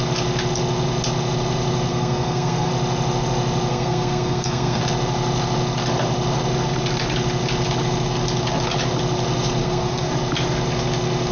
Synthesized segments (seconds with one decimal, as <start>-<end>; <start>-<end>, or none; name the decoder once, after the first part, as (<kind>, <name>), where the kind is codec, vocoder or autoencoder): 1.9-2.7 (codec, SNAC); 3.7-4.8; 9.6-10.1